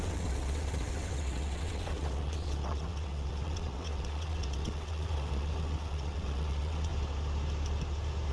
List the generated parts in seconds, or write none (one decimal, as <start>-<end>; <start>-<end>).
0.0-6.9